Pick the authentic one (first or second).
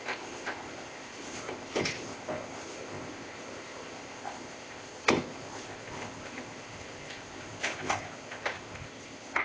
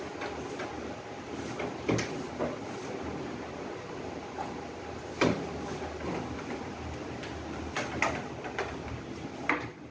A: second